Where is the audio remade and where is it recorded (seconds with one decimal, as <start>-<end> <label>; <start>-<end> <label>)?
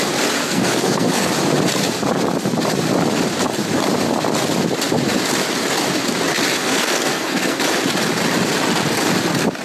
0.0-0.4 recorded; 0.4-1.3 remade; 1.3-6.6 recorded; 6.6-7.6 remade; 7.6-9.6 recorded